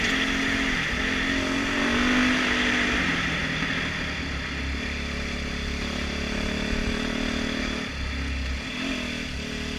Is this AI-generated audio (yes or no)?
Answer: no